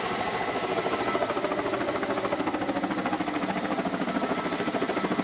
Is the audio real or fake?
real